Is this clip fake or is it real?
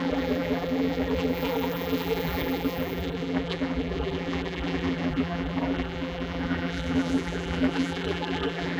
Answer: fake